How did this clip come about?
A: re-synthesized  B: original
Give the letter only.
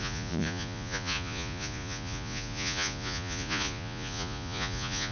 A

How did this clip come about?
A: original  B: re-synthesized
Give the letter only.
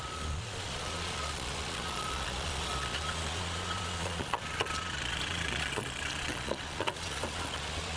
B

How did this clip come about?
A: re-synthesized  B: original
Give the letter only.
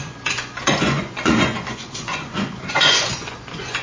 A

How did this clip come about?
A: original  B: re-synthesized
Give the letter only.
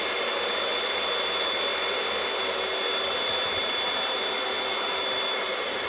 A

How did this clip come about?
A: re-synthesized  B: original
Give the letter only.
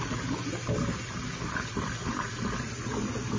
B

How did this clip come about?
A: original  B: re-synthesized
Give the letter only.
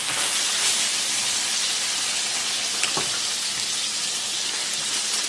A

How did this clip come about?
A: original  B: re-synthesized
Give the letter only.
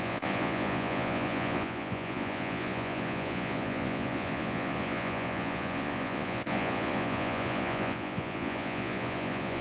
B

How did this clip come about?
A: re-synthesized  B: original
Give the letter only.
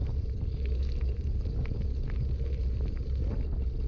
B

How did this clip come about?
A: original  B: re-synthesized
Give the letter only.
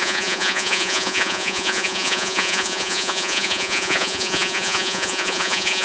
B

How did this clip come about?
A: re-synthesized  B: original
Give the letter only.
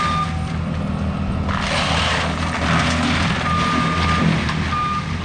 B